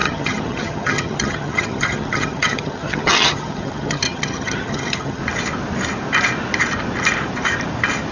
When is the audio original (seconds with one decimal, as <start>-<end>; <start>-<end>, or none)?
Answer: 5.2-8.1